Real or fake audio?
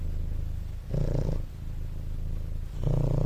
real